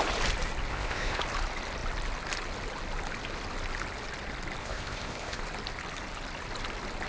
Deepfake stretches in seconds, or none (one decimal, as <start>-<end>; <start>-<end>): 0.7-1.2; 4.6-5.4